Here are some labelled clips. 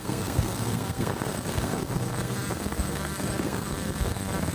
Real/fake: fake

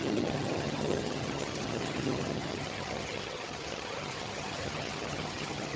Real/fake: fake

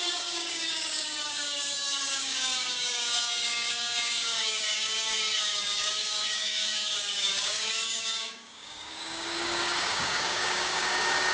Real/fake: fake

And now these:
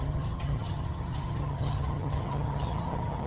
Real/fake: fake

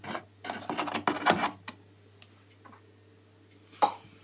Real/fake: real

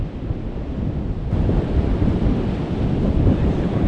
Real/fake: fake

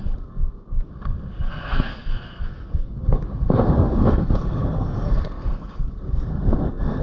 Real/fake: fake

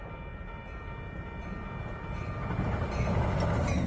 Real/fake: real